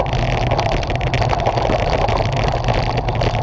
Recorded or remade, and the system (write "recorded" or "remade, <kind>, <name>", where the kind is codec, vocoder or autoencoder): recorded